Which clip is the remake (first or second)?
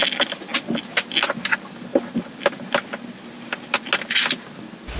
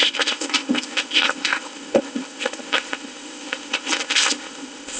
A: second